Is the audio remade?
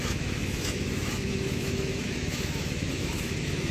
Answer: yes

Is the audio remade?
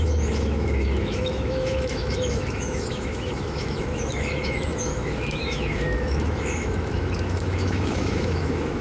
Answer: yes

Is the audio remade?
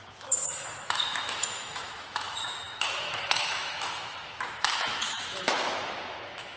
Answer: yes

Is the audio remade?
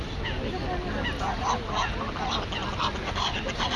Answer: no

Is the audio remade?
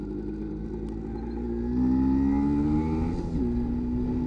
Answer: no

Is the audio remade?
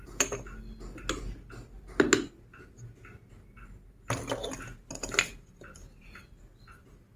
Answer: no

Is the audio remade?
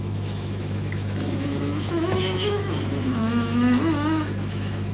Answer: yes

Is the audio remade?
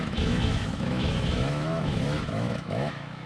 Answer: yes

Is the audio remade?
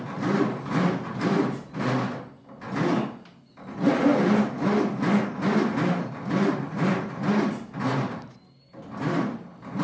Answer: no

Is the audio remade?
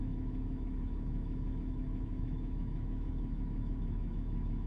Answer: yes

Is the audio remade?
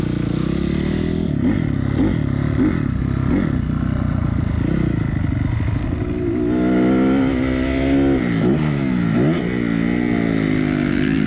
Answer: no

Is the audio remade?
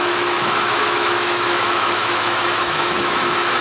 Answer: yes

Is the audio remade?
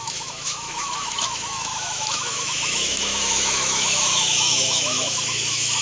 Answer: yes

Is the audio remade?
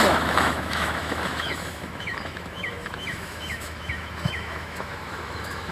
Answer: yes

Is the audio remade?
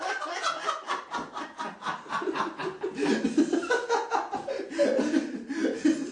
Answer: no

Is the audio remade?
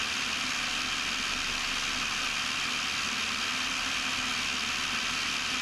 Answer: no